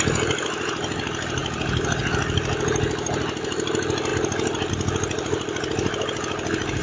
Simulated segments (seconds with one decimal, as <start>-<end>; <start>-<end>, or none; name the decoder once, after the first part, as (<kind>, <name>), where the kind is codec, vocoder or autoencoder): none